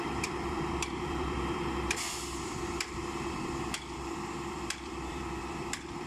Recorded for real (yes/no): no